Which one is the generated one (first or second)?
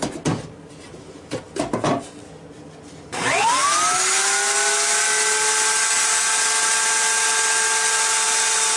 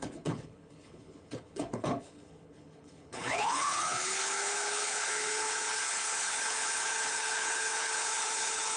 second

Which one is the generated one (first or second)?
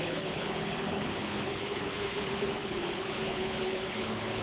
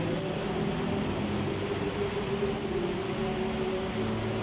first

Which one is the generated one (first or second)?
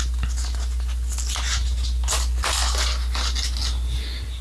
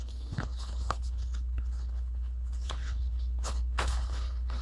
second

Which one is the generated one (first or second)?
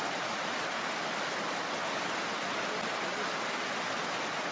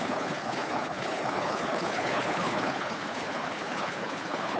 second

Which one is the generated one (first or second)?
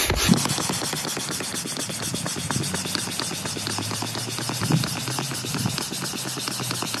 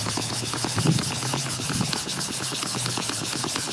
second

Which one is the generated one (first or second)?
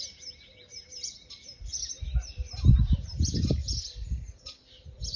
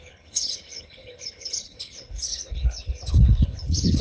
second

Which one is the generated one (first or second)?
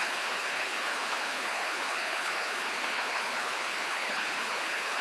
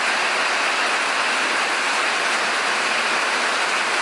first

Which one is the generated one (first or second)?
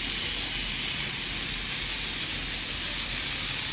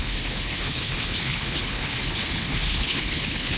second